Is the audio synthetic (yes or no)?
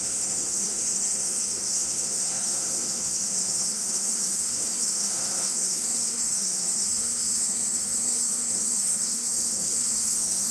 yes